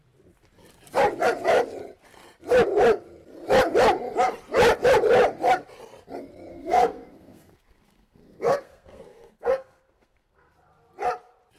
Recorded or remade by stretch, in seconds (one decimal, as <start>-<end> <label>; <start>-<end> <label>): 0.0-6.5 recorded; 6.5-10.5 remade; 10.5-11.6 recorded